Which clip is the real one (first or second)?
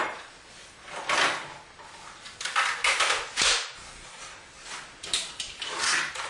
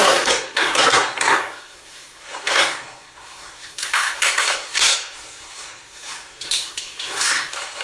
first